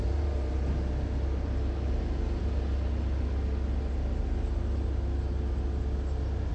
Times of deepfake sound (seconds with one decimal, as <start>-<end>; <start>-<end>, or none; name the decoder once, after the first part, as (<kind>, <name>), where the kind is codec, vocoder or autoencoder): none